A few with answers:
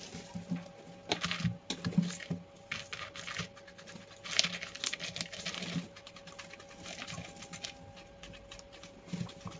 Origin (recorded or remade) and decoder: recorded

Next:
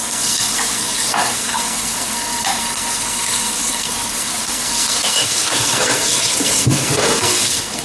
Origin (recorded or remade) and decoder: remade, codec, SNAC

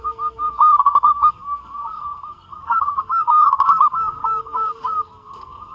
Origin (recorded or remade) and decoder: remade, codec, SNAC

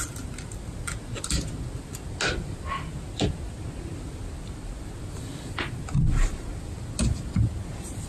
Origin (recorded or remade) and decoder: recorded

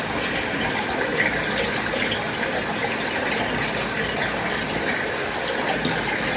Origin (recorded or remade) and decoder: recorded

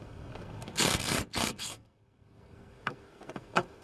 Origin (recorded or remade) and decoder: remade, codec, SNAC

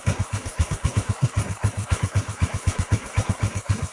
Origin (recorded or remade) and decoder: remade, codec, SNAC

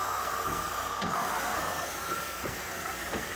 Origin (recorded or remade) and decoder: remade, codec, SNAC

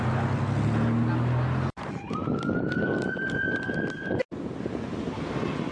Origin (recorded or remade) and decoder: recorded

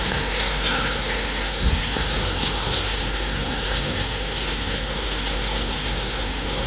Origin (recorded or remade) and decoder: remade, codec, SNAC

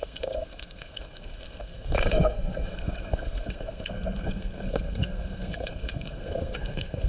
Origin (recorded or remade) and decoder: remade, codec, SNAC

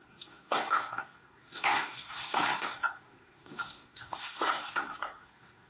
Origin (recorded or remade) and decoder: remade, codec, SNAC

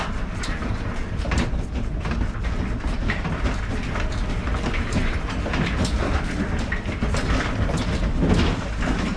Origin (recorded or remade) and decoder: recorded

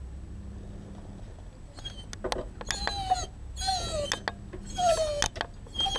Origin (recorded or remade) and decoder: recorded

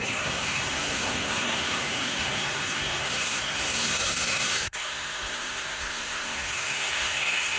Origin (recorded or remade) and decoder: remade, codec, SNAC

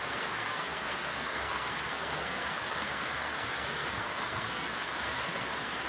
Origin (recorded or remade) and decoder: remade, codec, SNAC